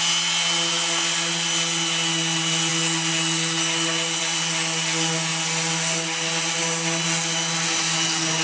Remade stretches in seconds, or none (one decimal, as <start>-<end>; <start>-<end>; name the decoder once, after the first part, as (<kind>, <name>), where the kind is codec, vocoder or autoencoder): none